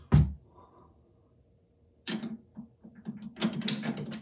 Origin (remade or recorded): recorded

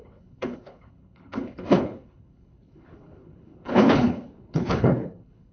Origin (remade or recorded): remade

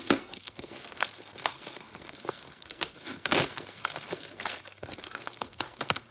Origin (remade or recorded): remade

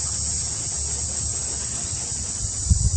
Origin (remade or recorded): recorded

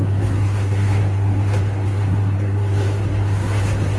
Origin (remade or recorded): remade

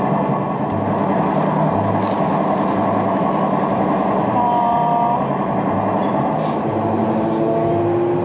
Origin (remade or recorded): recorded